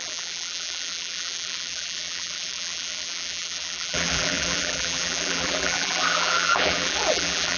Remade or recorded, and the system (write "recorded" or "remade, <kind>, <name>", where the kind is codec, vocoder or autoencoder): remade, vocoder, BigVGAN v2